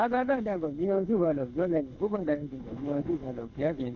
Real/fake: fake